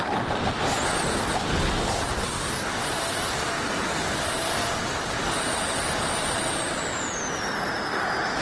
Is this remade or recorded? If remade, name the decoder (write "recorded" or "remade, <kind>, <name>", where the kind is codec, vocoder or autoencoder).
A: recorded